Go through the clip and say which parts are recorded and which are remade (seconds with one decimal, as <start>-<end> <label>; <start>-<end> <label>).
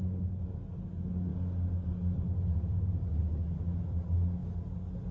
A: 0.0-5.1 recorded